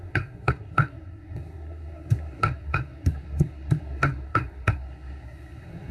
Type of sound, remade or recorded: remade